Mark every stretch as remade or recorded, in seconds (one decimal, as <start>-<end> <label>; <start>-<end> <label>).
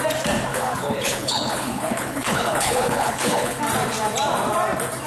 0.0-0.5 recorded; 0.5-3.6 remade; 3.6-5.1 recorded